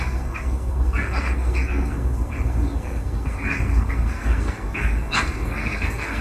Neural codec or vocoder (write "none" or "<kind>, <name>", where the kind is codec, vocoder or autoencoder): codec, SNAC